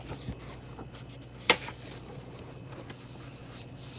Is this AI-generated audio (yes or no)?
no